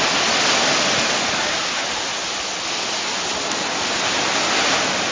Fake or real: real